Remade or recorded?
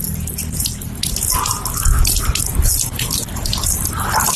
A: recorded